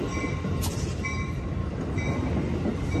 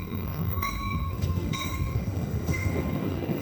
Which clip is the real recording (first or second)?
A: first